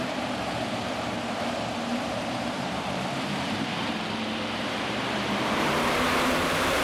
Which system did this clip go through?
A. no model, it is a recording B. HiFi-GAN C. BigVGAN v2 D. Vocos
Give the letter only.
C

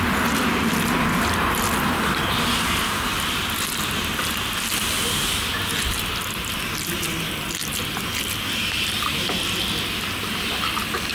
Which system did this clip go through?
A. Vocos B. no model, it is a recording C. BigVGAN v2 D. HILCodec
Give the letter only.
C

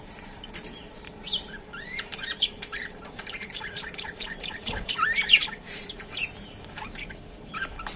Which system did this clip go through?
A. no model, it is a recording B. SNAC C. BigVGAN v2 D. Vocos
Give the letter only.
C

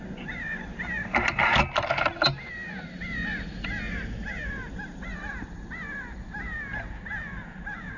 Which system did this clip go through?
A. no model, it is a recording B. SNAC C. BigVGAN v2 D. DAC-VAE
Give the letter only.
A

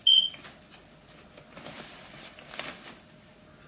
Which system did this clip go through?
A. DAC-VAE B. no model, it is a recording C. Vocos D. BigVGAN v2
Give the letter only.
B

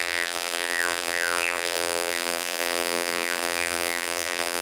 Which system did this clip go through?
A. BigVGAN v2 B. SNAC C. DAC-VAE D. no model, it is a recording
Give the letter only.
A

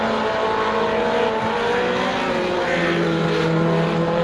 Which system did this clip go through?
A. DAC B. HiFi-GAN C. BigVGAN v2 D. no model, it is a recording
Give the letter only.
D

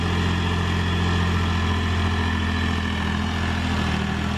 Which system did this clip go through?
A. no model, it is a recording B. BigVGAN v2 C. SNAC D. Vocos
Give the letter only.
A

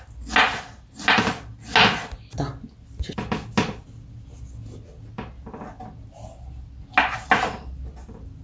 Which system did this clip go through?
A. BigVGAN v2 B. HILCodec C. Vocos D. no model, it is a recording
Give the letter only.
D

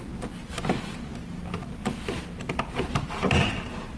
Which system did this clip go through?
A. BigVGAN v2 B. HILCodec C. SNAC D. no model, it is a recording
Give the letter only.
D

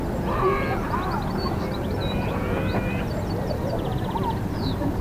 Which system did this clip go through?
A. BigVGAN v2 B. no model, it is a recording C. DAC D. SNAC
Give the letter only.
B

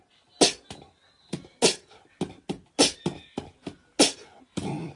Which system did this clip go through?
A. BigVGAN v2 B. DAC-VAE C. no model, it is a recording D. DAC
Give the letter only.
C